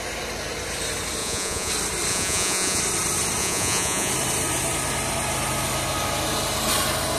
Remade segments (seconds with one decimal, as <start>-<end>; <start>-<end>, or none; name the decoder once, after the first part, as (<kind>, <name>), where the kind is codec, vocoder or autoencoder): 1.2-1.7 (vocoder, Vocos); 2.1-2.8; 3.4-4.1